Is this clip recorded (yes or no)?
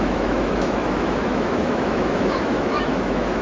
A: no